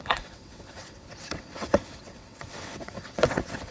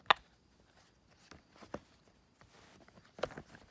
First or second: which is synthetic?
first